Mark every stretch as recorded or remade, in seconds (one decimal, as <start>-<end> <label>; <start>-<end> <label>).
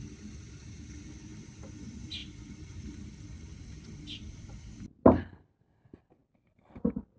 0.0-2.2 recorded; 2.2-4.9 remade; 4.9-6.2 recorded; 6.2-7.2 remade